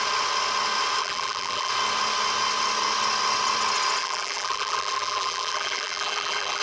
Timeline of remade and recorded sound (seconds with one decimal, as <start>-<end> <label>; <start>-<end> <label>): 0.0-1.0 recorded; 1.0-1.7 remade; 1.7-4.0 recorded; 4.0-6.6 remade